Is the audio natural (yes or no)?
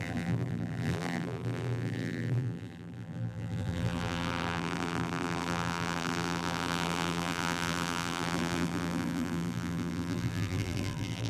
no